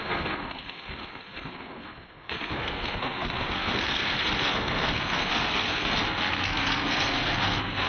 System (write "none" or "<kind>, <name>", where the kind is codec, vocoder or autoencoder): codec, SNAC